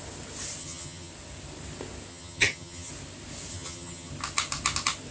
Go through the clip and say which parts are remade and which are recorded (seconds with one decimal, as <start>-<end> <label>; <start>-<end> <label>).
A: 0.0-0.6 recorded; 0.6-1.1 remade; 1.1-2.1 recorded; 2.1-2.9 remade; 2.9-3.5 recorded; 3.5-4.1 remade; 4.1-5.1 recorded